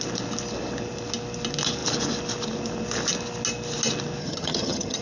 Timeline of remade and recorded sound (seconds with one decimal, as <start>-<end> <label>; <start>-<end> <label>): 0.0-4.2 recorded; 4.2-5.0 remade